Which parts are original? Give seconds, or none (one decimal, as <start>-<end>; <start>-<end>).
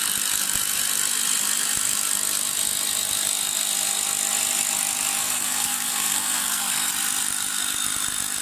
0.0-5.2; 6.9-8.4